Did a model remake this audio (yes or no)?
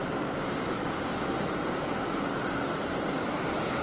no